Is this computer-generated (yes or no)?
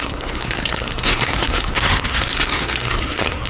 yes